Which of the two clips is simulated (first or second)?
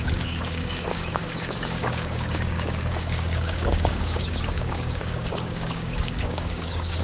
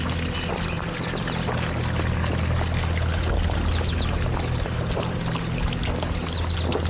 first